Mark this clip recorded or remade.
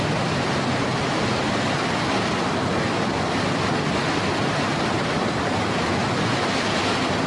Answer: recorded